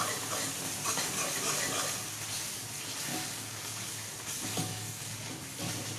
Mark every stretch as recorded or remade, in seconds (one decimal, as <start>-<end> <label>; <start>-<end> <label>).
0.0-3.1 recorded; 3.1-3.9 remade; 3.9-4.5 recorded; 4.5-5.3 remade; 5.3-6.0 recorded